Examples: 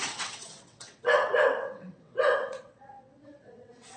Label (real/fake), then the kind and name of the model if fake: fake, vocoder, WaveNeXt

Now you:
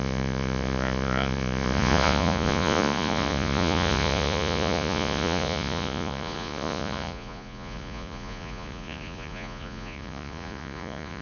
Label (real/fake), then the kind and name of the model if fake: fake, vocoder, Vocos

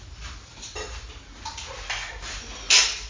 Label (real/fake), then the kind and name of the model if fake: real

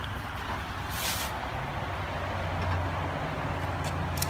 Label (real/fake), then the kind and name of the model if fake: real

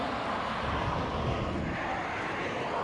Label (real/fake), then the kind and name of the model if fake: real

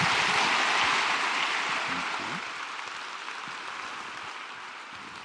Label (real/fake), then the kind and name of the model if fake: real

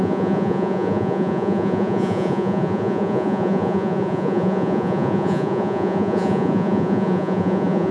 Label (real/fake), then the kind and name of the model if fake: fake, vocoder, Vocos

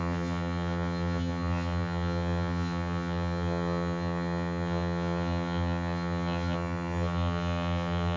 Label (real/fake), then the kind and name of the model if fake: fake, vocoder, HiFi-GAN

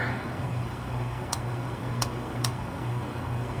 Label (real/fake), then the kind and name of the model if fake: fake, codec, SNAC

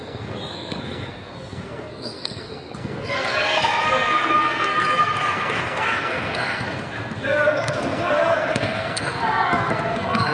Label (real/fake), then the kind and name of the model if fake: fake, codec, SNAC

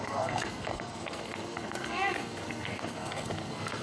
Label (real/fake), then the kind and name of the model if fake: fake, codec, SNAC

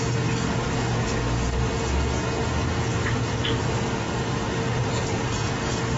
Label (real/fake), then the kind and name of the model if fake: real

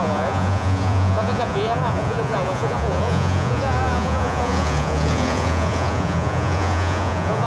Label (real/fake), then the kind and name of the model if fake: fake, vocoder, Vocos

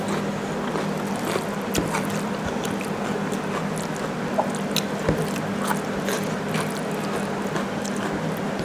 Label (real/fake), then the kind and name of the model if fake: real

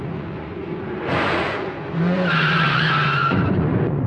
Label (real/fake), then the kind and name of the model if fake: fake, vocoder, Vocos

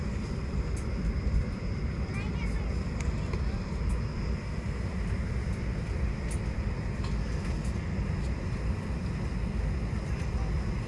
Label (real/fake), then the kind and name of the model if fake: real